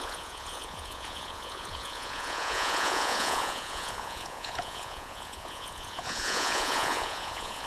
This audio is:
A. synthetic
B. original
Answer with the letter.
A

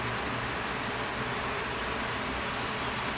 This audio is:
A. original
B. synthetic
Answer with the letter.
A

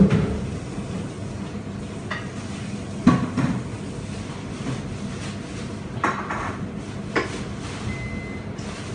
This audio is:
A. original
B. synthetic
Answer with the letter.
A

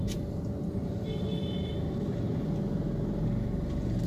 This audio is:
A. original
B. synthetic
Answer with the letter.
A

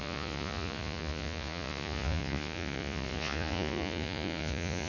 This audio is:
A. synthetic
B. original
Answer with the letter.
A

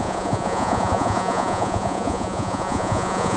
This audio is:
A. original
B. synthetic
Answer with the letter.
B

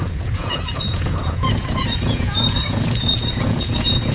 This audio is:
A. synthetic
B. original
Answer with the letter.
A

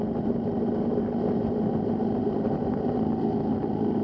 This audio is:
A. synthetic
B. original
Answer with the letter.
B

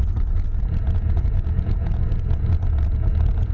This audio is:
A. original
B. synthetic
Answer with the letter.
B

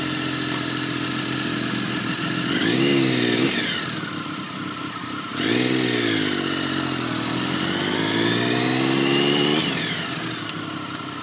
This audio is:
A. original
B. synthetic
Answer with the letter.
A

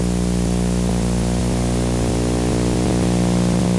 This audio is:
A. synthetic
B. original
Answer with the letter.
B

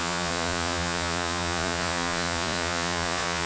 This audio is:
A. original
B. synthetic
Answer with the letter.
B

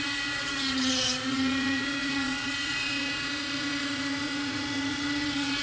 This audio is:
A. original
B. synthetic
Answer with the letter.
B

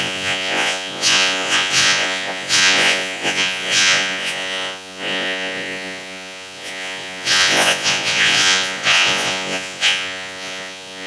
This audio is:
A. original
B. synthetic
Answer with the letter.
B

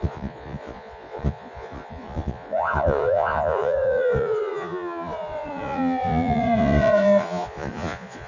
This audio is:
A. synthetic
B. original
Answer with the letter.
A